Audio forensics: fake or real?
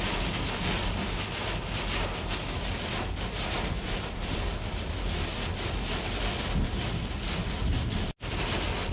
real